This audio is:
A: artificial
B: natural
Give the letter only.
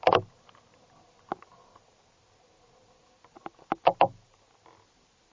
B